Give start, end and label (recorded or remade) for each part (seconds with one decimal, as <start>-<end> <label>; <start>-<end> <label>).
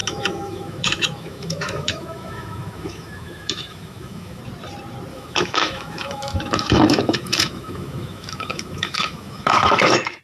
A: 0.0-4.4 remade; 4.4-5.1 recorded; 5.1-10.2 remade